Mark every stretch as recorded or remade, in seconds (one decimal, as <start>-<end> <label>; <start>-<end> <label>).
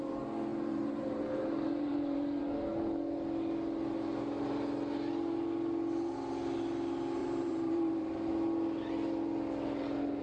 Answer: 0.0-0.5 recorded; 0.5-2.4 remade; 2.4-7.2 recorded; 7.2-8.3 remade; 8.3-10.2 recorded